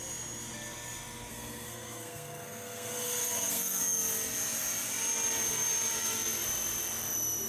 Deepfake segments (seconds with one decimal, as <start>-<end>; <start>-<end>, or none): 1.3-3.8